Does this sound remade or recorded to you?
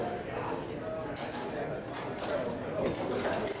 recorded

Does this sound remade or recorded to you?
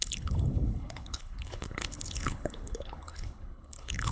remade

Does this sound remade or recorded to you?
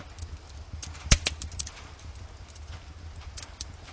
recorded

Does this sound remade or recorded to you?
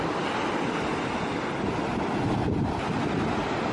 recorded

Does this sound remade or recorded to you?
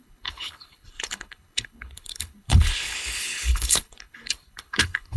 remade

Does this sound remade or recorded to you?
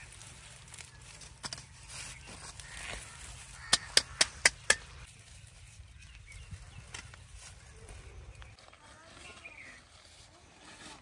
recorded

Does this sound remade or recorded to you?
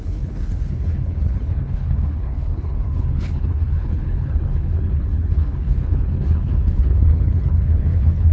remade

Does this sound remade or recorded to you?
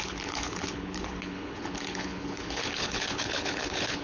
remade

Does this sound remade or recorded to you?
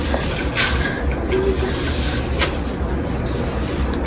recorded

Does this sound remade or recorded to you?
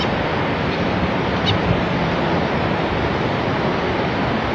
recorded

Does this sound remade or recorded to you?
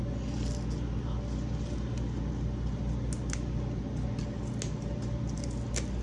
recorded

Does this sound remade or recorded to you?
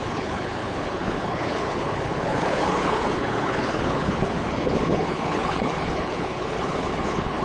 remade